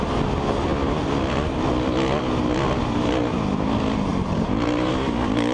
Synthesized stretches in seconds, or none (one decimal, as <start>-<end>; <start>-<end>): 4.1-4.9